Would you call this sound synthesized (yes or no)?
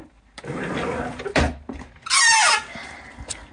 no